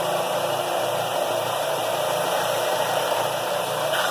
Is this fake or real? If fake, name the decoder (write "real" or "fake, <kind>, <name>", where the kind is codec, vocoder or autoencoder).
fake, vocoder, BigVGAN v2